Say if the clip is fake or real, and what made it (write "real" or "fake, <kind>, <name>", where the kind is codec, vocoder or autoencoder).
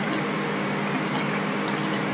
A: real